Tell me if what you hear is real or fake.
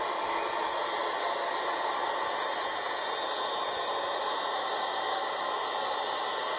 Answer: real